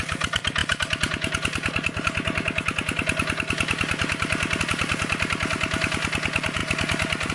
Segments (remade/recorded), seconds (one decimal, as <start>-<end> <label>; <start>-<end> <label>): 0.0-7.3 recorded

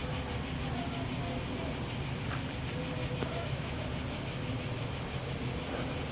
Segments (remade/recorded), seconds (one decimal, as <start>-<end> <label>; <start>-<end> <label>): 0.0-3.0 recorded; 3.0-3.8 remade; 3.8-6.1 recorded

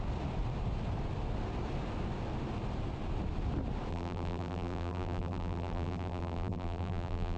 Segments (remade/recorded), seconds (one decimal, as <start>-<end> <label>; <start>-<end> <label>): 0.0-3.9 recorded; 3.9-7.4 remade

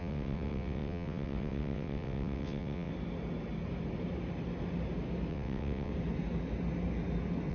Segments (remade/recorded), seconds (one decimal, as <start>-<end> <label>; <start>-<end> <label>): 0.0-2.9 remade; 2.9-5.3 recorded; 5.3-5.9 remade; 5.9-7.5 recorded

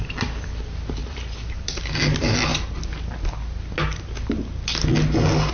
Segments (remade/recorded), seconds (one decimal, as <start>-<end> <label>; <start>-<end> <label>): 0.0-1.0 recorded; 1.0-1.9 remade; 1.9-5.5 recorded